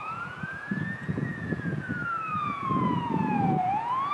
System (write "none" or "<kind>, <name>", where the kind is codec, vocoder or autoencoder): vocoder, Vocos